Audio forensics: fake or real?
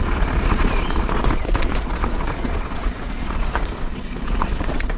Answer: fake